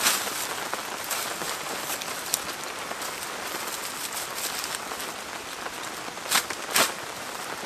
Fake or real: real